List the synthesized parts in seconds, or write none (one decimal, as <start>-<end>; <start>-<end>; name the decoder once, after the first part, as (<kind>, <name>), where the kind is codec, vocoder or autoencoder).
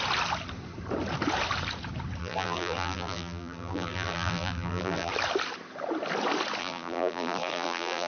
2.2-5.1 (vocoder, BigVGAN v2); 6.6-8.1